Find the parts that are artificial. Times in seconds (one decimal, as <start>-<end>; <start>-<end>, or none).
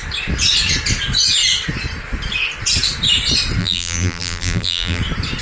3.6-5.0